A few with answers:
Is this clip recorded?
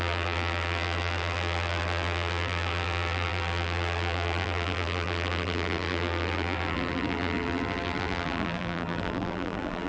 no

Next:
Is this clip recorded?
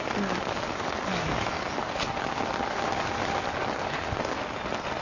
yes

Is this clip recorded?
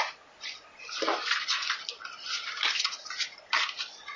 yes